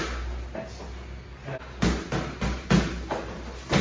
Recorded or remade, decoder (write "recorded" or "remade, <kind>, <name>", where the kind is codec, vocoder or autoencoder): recorded